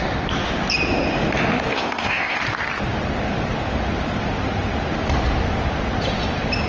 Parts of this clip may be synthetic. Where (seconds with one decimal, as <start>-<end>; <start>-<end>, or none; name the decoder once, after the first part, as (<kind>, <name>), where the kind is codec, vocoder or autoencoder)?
1.7-2.4 (codec, ZipCodec)